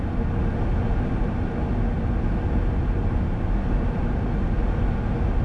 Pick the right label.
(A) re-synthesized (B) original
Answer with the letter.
B